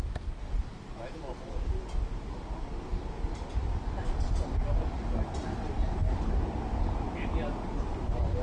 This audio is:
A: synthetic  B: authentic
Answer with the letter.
B